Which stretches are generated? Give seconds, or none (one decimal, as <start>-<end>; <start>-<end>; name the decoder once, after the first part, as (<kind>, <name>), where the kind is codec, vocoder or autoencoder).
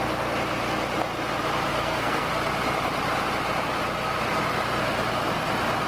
1.7-2.3 (codec, SNAC)